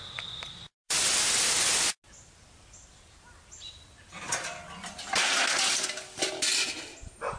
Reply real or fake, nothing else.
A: real